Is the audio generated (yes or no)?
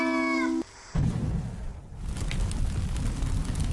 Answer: no